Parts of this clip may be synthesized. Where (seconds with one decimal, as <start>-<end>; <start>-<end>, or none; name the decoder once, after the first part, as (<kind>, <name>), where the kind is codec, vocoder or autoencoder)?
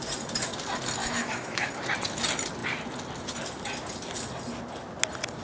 1.0-1.7 (autoencoder, DAC-VAE)